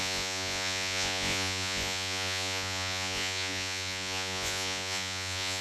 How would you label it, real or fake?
fake